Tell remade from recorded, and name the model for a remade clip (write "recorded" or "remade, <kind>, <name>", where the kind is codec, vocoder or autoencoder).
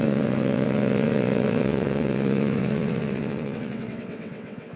remade, vocoder, WaveNeXt